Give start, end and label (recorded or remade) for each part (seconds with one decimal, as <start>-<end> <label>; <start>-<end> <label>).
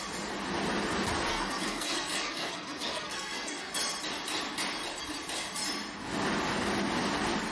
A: 0.0-1.3 recorded; 1.3-3.7 remade; 3.7-7.5 recorded